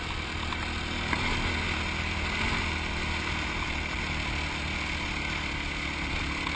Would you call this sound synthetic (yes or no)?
no